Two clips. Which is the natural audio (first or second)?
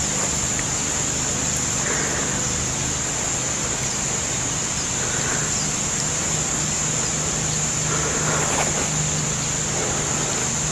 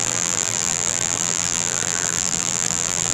first